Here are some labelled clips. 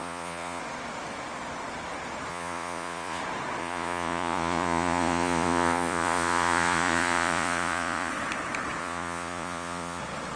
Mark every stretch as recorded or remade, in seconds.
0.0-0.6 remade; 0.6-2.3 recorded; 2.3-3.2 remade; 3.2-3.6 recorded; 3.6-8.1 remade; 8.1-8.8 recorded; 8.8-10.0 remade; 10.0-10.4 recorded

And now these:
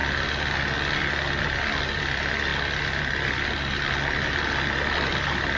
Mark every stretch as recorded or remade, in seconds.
0.0-5.6 recorded